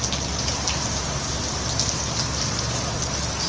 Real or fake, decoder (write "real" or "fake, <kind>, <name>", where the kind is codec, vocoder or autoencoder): real